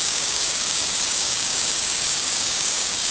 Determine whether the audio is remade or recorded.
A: remade